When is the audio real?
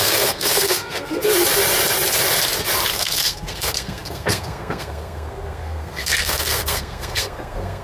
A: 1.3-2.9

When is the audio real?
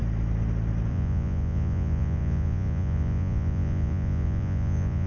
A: 0.0-0.9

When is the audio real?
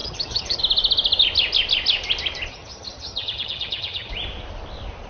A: 0.6-2.5; 4.1-5.1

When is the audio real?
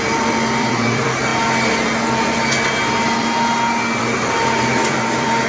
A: 1.3-4.0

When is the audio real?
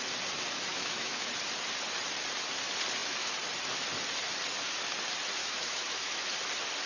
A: 0.0-0.7; 1.3-5.4; 6.2-6.9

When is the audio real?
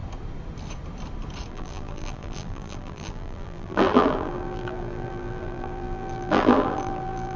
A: 0.0-1.5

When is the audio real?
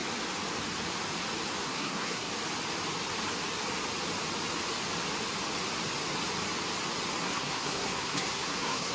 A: 0.0-1.6; 2.3-7.2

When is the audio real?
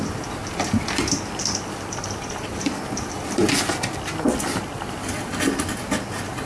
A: 0.0-0.4; 2.5-6.5